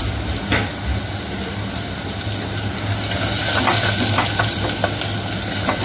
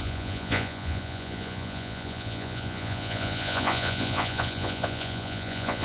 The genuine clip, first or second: first